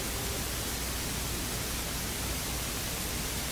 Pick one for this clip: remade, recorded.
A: recorded